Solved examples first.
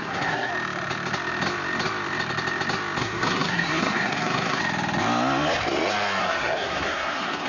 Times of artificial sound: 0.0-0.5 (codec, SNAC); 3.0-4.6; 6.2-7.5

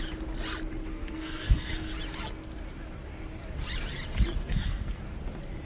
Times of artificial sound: 0.9-1.9 (codec, SNAC); 4.4-5.0

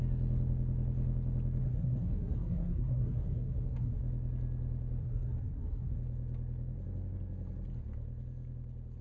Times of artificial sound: 1.6-4.0 (codec, SNAC); 5.0-6.0

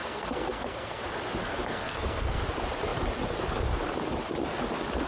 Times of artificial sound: 0.0-1.0 (codec, SNAC); 1.4-2.4

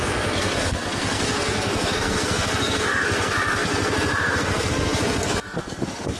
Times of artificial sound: 0.0-6.2 (codec, SNAC)